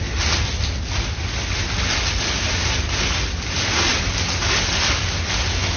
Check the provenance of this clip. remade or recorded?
recorded